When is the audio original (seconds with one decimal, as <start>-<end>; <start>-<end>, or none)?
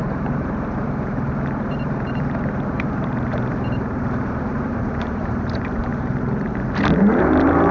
5.9-7.2